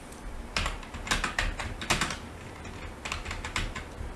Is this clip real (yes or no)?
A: yes